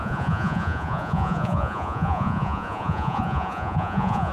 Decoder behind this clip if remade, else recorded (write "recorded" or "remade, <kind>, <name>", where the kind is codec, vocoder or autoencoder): remade, vocoder, Vocos